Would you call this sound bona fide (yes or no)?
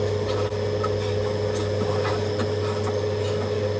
yes